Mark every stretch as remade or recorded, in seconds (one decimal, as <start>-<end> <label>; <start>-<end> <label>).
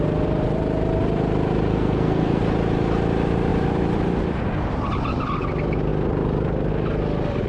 0.0-1.7 recorded; 1.7-2.4 remade; 2.4-7.5 recorded